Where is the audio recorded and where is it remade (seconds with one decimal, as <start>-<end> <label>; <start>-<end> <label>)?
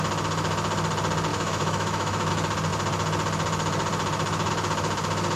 0.0-1.3 recorded; 1.3-2.3 remade; 2.3-5.4 recorded